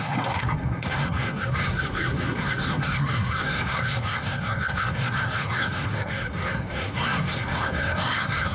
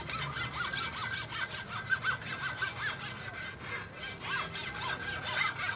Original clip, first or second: second